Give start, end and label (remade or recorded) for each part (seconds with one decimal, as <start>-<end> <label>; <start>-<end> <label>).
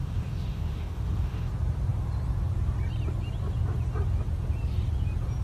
0.0-1.5 remade; 1.5-5.4 recorded